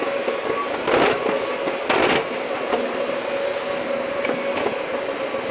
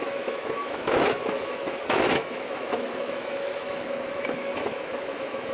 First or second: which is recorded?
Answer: first